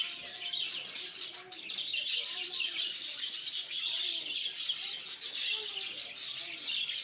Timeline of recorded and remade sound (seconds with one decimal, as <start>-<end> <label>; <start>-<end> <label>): 0.0-0.7 recorded; 0.7-4.9 remade; 4.9-7.0 recorded